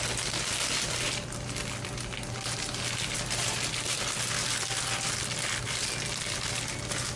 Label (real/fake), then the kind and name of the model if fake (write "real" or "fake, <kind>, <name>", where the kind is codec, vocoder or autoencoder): real